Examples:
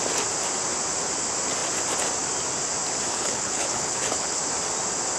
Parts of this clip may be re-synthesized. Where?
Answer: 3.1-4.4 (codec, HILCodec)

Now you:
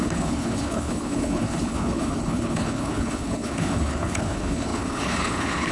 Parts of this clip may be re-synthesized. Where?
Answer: 0.0-5.7 (codec, HILCodec)

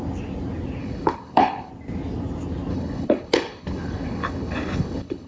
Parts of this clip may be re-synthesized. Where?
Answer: 0.8-1.7 (codec, HILCodec); 2.7-5.3

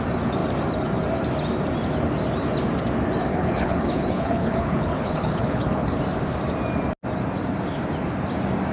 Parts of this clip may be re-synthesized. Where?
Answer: 3.3-6.0 (codec, HILCodec)

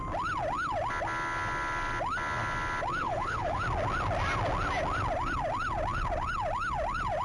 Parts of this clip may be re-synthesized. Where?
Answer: 3.0-3.6 (codec, HILCodec)

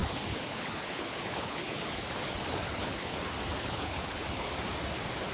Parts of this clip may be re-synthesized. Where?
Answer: 0.0-3.2 (codec, HILCodec); 3.6-4.5

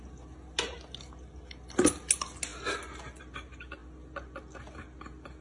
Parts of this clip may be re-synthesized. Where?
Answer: none

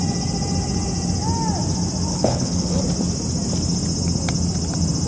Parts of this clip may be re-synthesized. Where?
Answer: 2.1-2.8 (codec, HILCodec)